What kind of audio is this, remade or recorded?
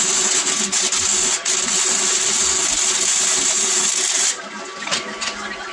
recorded